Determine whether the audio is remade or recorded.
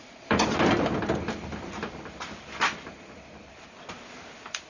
recorded